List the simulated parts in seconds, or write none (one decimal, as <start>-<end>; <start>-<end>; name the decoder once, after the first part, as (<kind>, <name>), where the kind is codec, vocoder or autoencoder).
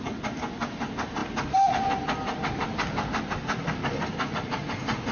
none